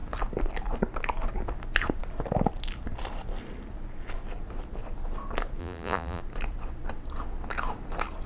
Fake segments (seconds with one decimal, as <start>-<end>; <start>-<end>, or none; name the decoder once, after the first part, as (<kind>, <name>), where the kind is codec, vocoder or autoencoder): 5.6-6.2 (vocoder, BigVGAN v2)